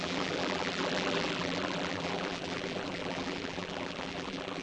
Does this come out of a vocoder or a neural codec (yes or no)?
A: yes